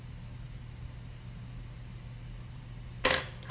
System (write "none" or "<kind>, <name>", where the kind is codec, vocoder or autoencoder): none